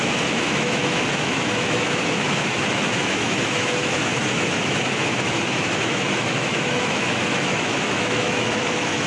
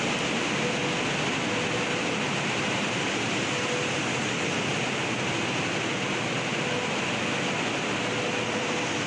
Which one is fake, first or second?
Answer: first